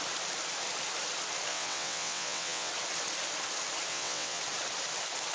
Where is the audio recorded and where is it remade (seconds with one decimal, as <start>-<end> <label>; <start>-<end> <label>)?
0.0-1.5 recorded; 1.5-2.7 remade; 2.7-3.9 recorded; 3.9-4.4 remade; 4.4-5.3 recorded